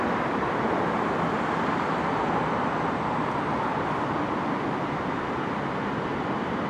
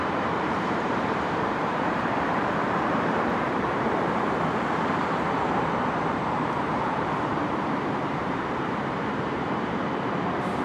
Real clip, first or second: first